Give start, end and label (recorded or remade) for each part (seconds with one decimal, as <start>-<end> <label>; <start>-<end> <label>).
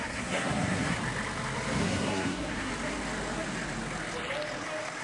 0.0-1.0 remade; 1.0-1.8 recorded; 1.8-2.7 remade; 2.7-5.0 recorded